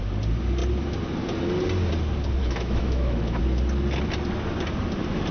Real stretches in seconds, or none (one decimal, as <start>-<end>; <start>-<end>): 0.0-2.4; 3.4-5.3

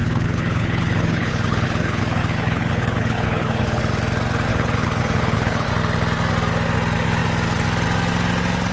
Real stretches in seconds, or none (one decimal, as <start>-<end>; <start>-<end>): 3.8-4.5; 5.7-8.7